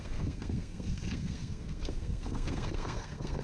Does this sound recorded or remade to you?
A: remade